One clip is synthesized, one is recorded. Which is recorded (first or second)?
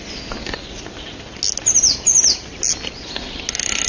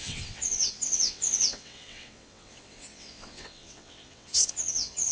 first